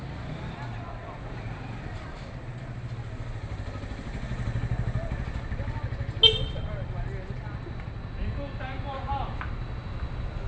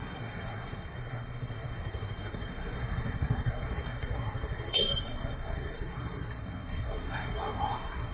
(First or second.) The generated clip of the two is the second